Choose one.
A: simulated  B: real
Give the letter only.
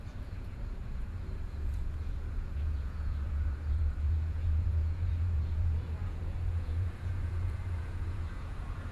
A